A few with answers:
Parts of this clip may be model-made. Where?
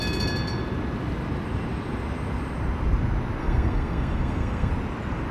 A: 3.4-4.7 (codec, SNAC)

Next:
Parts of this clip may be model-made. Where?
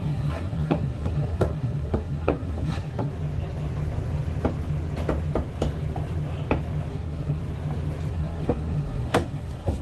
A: 0.0-3.1 (codec, SNAC); 6.9-7.4; 8.1-9.8